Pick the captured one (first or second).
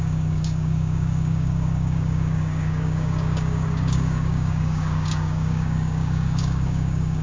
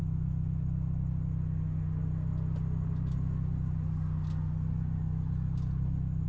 second